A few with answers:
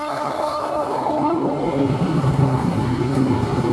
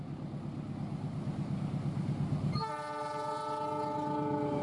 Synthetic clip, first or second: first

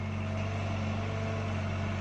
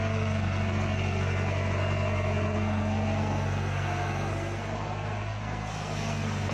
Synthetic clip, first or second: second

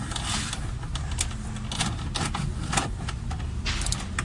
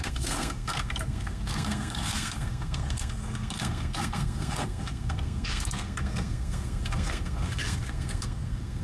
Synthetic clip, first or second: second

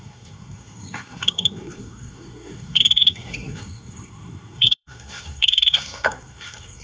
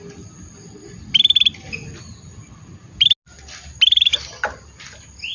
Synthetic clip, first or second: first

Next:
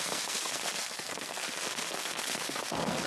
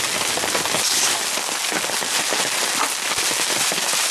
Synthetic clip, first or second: first